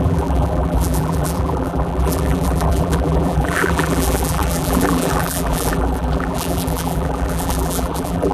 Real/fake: fake